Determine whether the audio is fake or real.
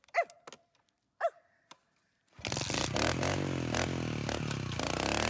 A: real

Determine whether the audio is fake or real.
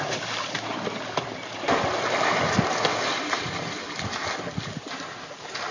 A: real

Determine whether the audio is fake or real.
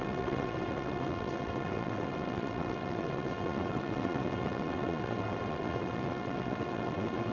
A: fake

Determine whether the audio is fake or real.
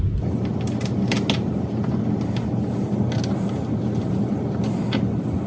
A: real